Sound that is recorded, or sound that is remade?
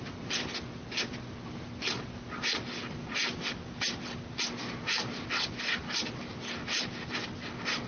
recorded